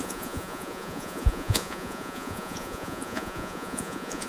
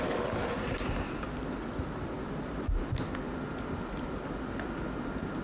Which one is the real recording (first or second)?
second